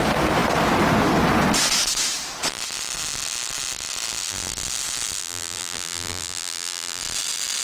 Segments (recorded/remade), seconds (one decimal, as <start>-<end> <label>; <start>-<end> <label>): 0.0-5.2 recorded; 5.2-7.0 remade; 7.0-7.6 recorded